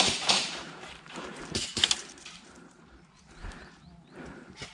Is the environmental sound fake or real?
fake